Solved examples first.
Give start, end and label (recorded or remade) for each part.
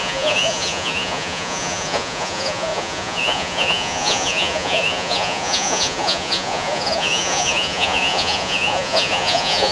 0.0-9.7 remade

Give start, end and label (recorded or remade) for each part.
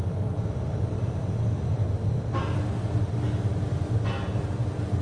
0.0-5.0 recorded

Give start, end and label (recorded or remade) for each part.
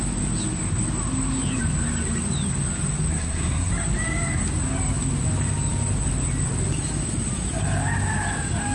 0.0-3.1 recorded; 3.1-3.7 remade; 3.7-8.7 recorded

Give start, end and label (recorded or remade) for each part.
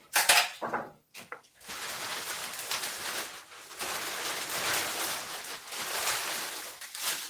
0.0-1.1 recorded; 1.1-1.7 remade; 1.7-7.3 recorded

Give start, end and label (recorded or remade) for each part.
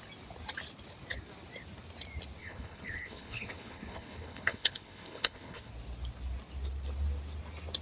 0.0-2.4 recorded; 2.4-5.7 remade; 5.7-7.8 recorded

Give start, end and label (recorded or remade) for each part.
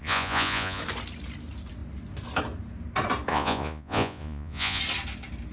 0.0-0.8 remade; 0.8-3.3 recorded; 3.3-4.8 remade; 4.8-5.5 recorded